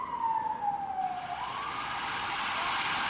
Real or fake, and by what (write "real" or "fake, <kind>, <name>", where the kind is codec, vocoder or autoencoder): real